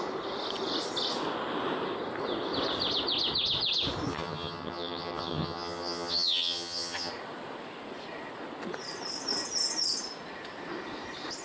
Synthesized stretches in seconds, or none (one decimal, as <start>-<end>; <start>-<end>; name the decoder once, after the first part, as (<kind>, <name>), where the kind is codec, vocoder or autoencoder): 4.1-7.1 (vocoder, HiFi-GAN)